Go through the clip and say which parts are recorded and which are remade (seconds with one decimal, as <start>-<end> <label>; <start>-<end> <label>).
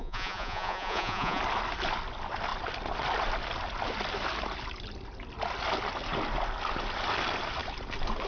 0.0-1.4 remade; 1.4-8.3 recorded